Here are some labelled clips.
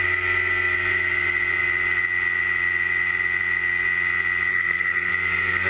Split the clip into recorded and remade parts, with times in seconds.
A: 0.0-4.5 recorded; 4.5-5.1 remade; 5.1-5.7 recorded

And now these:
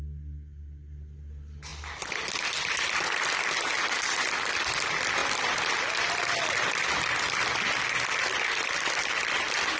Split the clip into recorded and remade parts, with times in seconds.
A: 0.0-9.8 recorded